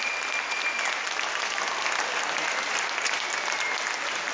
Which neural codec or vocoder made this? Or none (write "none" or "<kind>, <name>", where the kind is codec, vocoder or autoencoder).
none